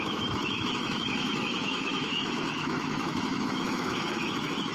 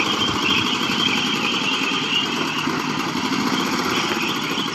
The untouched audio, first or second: second